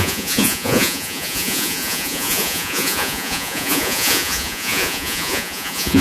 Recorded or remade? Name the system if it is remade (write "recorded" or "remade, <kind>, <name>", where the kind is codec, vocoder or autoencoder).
remade, vocoder, Vocos